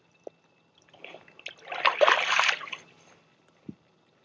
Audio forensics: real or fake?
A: real